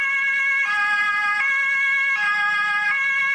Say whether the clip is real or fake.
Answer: real